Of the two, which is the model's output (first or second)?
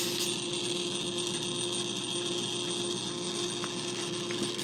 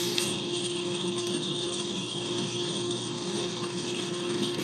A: second